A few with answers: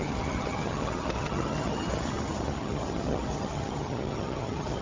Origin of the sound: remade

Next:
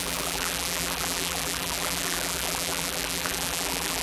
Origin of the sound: remade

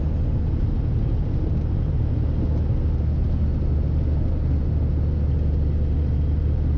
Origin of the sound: recorded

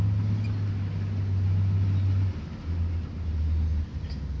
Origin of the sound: recorded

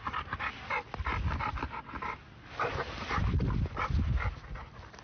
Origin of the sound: recorded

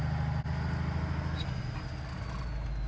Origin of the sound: recorded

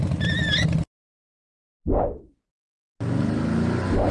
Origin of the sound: recorded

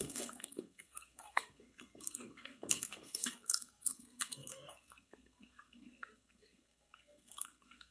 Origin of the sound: remade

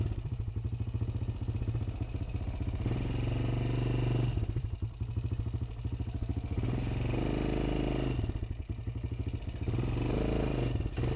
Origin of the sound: recorded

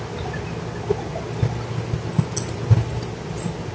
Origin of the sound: recorded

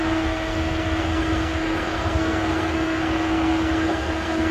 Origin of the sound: remade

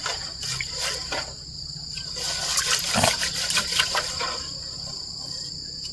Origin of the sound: recorded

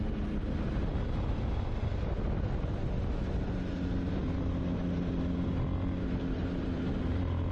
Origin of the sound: recorded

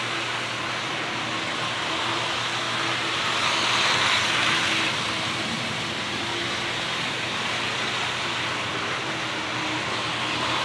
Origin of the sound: recorded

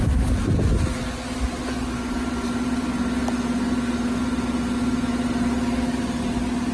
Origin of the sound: recorded